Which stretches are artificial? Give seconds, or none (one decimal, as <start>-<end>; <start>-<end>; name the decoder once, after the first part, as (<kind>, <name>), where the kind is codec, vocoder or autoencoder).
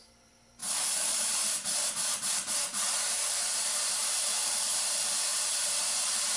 0.0-6.4 (vocoder, BigVGAN v2)